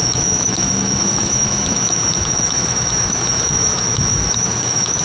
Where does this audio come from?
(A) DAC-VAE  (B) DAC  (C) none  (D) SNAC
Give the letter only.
A